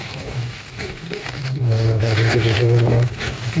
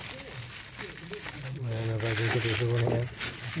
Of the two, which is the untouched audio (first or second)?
second